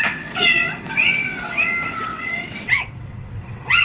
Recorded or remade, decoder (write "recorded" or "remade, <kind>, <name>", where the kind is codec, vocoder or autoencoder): remade, vocoder, WaveNeXt